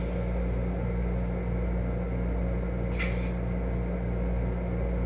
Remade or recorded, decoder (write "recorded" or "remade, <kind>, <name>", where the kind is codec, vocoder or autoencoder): recorded